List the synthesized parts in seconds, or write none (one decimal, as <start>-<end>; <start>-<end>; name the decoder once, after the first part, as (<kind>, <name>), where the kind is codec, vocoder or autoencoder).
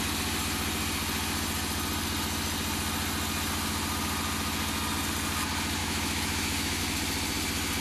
5.8-6.8 (autoencoder, DAC-VAE)